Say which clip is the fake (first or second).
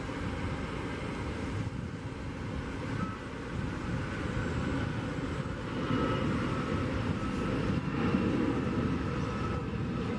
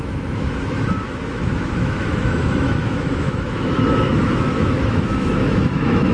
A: second